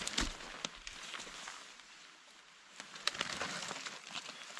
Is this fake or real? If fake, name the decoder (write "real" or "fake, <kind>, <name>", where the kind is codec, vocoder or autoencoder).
real